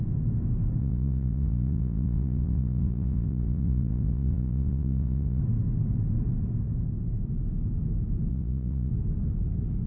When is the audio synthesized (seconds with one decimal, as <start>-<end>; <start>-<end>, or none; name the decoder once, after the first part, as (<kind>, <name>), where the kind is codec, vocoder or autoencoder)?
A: 0.8-5.4 (vocoder, Vocos); 8.3-8.9